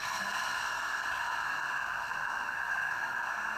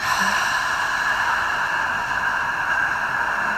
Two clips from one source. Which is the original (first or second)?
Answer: second